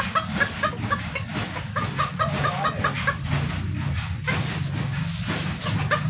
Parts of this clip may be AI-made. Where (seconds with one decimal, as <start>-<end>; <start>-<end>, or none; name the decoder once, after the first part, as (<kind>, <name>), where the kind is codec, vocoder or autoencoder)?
none